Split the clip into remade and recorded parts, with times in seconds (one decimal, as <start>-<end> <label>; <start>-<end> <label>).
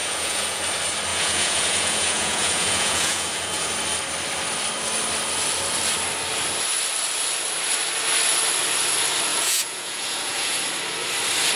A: 0.0-0.6 remade; 0.6-1.1 recorded; 1.1-3.7 remade; 3.7-9.3 recorded; 9.3-10.6 remade; 10.6-11.6 recorded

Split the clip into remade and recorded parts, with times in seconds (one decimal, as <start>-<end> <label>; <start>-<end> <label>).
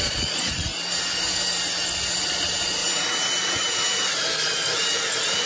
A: 0.0-0.7 remade; 0.7-2.3 recorded; 2.3-2.8 remade; 2.8-5.5 recorded